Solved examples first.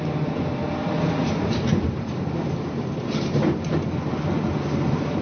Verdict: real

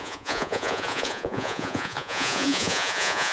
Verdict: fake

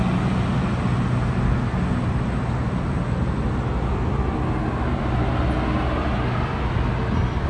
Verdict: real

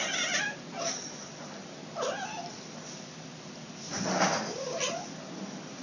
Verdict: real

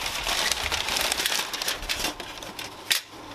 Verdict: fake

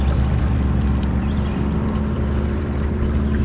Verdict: fake